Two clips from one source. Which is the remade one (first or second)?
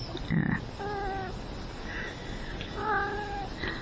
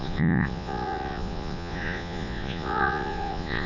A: second